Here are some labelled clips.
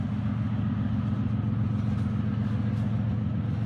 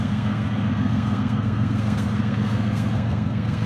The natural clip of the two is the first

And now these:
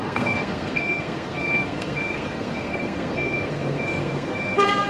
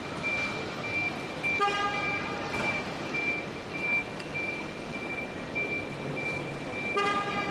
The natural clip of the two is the second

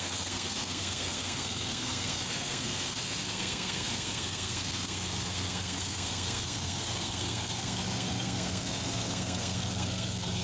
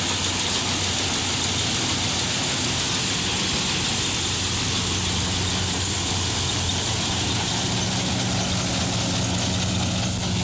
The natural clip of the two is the second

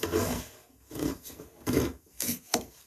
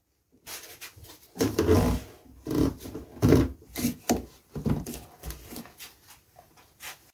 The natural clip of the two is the second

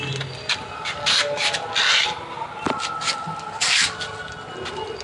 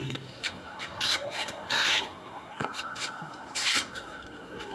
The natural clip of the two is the first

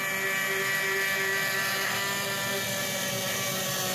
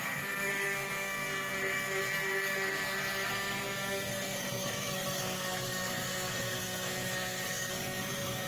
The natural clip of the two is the first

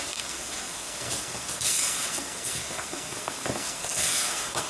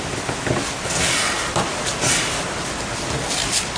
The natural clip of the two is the second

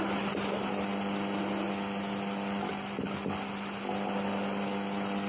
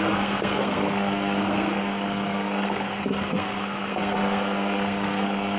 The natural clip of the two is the first